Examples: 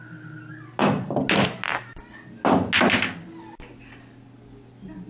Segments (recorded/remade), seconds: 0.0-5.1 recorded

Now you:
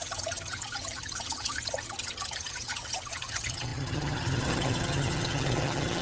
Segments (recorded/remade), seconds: 0.0-6.0 remade